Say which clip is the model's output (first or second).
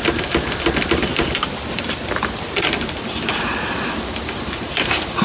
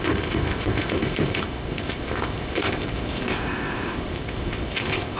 second